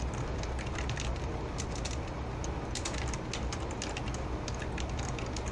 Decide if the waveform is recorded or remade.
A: recorded